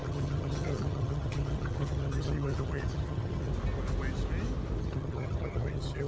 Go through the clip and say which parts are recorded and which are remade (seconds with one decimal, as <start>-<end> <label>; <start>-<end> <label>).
0.0-3.5 remade; 3.5-4.8 recorded; 4.8-6.1 remade